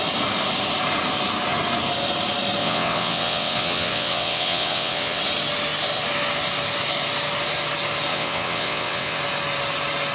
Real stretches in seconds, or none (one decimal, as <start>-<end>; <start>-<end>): 0.0-2.6; 5.2-8.1; 9.2-10.1